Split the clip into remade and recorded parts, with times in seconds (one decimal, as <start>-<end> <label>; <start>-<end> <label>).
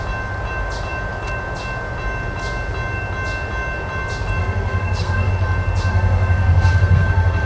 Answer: 0.0-4.4 recorded; 4.4-5.3 remade; 5.3-5.9 recorded; 5.9-7.5 remade